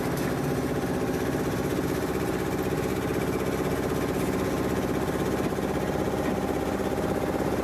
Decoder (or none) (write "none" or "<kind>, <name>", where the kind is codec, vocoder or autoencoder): none